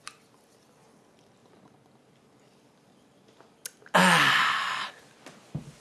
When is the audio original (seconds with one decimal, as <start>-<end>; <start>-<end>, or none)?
0.0-5.8